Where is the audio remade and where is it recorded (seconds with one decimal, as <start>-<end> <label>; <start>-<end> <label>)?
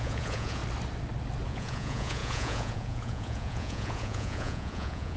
0.0-0.6 remade; 0.6-1.5 recorded; 1.5-5.2 remade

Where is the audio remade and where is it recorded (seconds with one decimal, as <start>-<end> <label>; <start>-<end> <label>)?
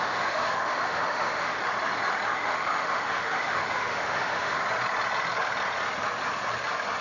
0.0-1.6 remade; 1.6-2.3 recorded; 2.3-4.6 remade; 4.6-7.0 recorded